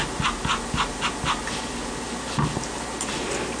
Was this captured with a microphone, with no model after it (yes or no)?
yes